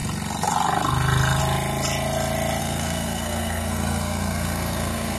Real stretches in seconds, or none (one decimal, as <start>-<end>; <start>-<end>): 0.0-2.6